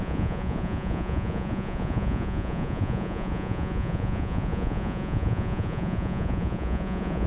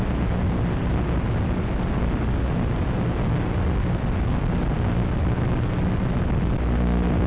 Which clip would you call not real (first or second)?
first